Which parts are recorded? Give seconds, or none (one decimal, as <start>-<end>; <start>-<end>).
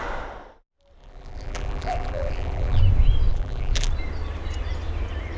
0.0-1.0; 2.8-3.3; 3.9-5.4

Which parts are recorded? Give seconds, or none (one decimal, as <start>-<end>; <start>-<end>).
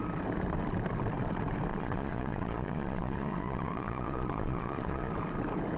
0.0-1.7; 5.1-5.8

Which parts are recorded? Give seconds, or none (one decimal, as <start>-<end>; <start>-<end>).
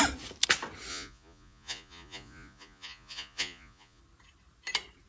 0.0-0.9; 4.0-5.1